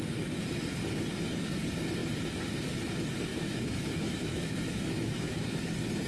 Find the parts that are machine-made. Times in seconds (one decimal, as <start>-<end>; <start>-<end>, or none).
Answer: 3.3-5.6